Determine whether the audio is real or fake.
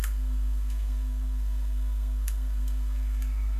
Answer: fake